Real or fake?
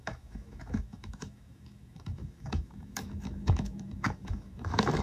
fake